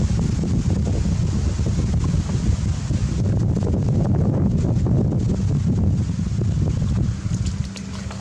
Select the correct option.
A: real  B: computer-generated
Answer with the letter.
A